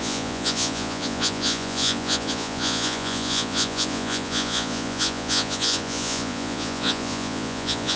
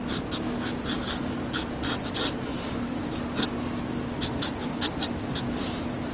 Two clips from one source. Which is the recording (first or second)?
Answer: second